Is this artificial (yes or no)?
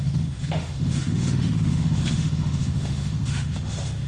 yes